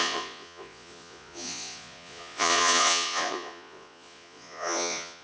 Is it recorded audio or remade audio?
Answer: remade